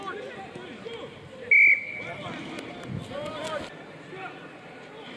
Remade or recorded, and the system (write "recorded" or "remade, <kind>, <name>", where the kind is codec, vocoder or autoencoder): recorded